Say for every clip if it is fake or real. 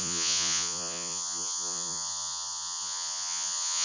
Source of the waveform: fake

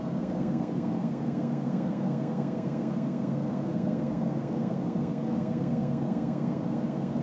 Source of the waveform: fake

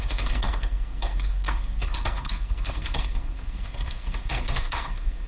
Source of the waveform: fake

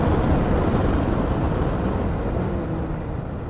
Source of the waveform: real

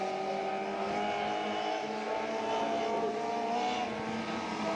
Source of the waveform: real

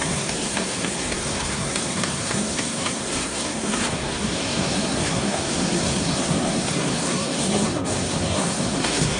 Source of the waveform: fake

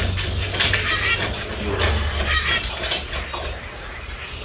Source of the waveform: real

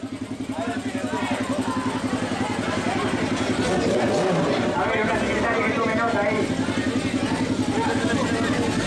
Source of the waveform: real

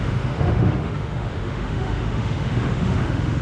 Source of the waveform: fake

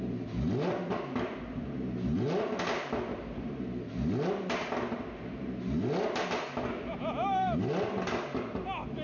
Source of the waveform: real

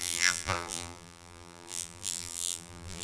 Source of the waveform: fake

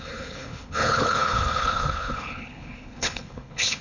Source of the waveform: fake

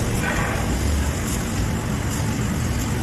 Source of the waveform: real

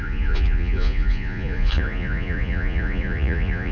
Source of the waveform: fake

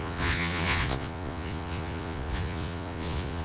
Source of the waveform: fake